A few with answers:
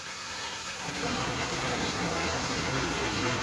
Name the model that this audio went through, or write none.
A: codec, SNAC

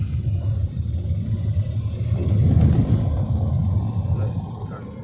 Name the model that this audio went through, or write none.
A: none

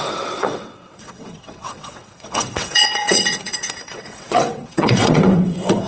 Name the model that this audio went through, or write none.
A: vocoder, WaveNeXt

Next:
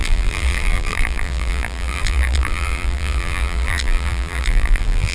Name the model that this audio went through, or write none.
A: vocoder, BigVGAN v2